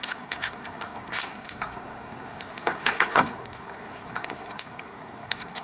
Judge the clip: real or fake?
fake